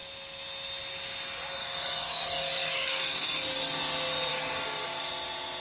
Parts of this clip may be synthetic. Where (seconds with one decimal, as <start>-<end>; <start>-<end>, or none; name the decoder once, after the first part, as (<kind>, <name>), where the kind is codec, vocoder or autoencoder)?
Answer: 1.6-3.8 (codec, DAC); 4.3-5.1